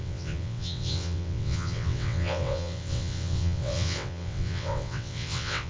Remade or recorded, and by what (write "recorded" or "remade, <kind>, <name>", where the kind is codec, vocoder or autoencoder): remade, vocoder, WaveNeXt